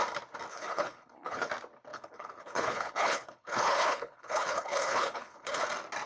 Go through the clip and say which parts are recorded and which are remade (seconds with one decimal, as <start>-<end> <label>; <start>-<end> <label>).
0.0-0.5 recorded; 0.5-1.5 remade; 1.5-1.9 recorded; 1.9-5.6 remade; 5.6-6.1 recorded